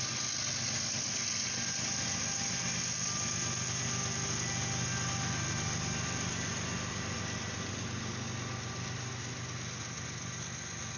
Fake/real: real